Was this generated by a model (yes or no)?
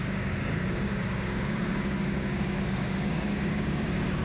yes